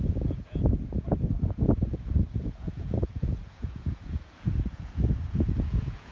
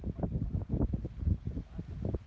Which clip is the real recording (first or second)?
second